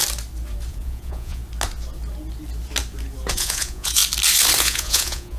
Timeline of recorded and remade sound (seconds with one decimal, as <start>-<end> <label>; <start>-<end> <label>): 0.0-0.7 recorded; 0.7-1.4 remade; 1.4-3.3 recorded; 3.3-4.0 remade; 4.0-4.6 recorded; 4.6-5.4 remade